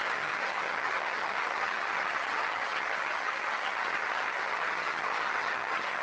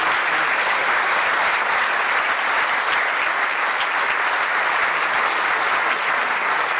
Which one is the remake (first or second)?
first